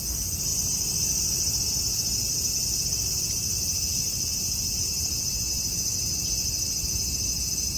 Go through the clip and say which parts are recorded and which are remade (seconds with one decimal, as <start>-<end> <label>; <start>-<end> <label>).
0.0-7.8 recorded